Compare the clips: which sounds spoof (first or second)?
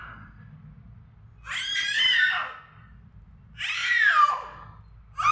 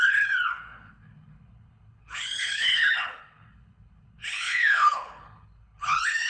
second